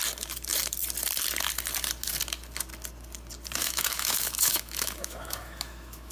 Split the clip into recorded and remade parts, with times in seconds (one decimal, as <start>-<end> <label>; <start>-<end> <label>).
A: 0.0-3.6 recorded; 3.6-6.1 remade